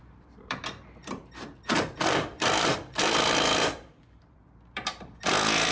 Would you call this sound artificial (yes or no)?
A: yes